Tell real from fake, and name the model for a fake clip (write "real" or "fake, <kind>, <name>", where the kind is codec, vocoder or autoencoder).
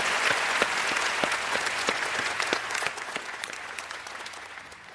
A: fake, vocoder, Vocos